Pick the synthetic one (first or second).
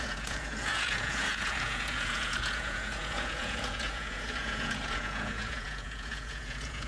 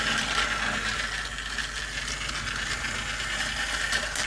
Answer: first